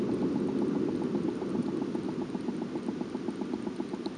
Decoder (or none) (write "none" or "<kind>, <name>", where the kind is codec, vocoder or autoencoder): none